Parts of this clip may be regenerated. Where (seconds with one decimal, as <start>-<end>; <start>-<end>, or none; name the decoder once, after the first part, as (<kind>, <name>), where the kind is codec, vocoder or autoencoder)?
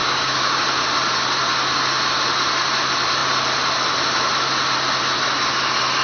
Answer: 0.0-0.6 (codec, DAC)